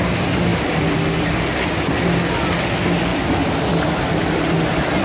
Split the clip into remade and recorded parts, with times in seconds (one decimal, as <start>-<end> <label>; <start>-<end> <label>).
0.0-5.0 recorded

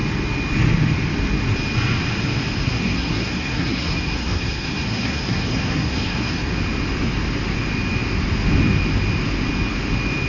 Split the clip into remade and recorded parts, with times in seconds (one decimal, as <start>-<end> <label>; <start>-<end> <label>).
0.0-2.6 recorded; 2.6-6.5 remade; 6.5-10.3 recorded

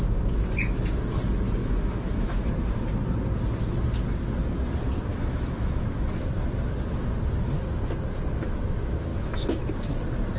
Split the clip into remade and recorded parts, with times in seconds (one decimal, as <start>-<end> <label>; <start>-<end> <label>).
0.0-1.6 recorded; 1.6-2.5 remade; 2.5-5.1 recorded; 5.1-6.2 remade; 6.2-9.1 recorded; 9.1-9.7 remade; 9.7-10.4 recorded

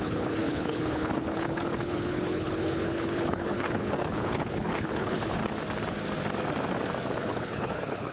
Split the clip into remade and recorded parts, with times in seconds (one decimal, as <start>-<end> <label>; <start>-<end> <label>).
0.0-5.4 remade; 5.4-7.2 recorded; 7.2-8.1 remade